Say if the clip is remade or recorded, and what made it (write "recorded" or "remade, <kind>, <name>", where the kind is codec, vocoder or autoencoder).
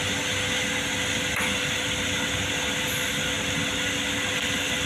recorded